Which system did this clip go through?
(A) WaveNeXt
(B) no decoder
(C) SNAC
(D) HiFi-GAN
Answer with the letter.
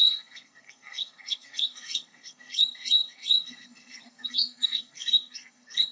C